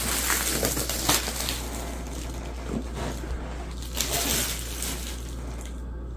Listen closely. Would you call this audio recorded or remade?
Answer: recorded